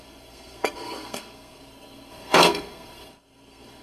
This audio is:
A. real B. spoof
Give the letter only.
B